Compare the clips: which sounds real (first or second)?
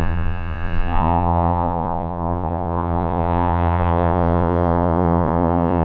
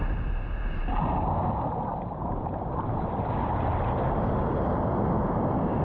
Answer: second